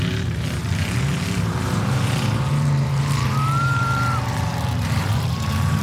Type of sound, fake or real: fake